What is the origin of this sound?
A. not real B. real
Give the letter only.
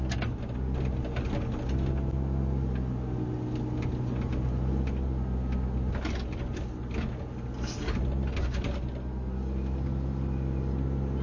B